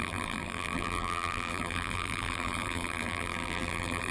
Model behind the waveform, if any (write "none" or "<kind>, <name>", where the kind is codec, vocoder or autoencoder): vocoder, BigVGAN v2